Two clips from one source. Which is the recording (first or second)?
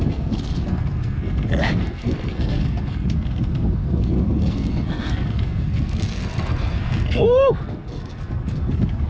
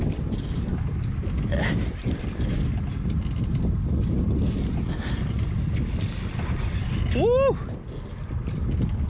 second